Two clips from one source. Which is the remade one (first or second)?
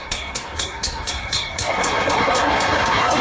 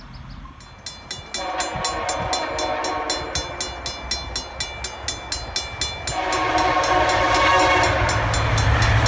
first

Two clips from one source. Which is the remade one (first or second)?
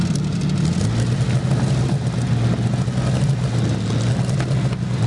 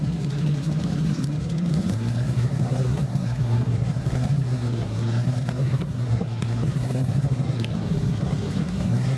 second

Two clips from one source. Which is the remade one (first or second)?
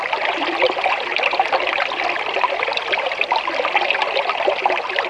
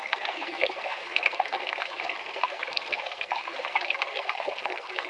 second